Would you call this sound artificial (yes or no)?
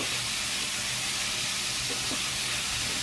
yes